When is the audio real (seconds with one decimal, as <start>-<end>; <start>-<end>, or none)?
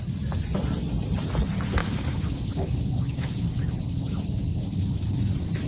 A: 0.0-1.8; 5.2-5.7